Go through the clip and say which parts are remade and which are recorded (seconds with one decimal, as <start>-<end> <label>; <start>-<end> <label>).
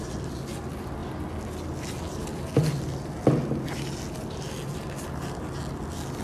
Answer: 0.0-6.2 recorded